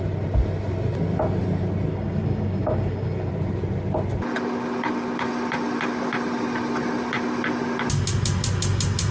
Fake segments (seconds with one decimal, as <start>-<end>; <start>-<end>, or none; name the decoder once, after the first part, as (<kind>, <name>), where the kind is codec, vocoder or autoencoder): 1.9-3.3 (codec, DAC)